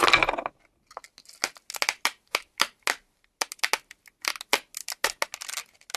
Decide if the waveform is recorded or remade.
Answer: recorded